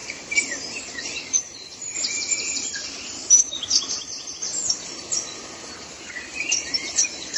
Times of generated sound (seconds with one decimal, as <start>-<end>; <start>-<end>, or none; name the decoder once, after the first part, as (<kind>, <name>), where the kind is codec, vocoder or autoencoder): 0.0-4.3 (vocoder, BigVGAN v2)